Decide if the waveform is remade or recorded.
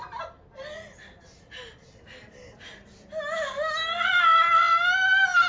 recorded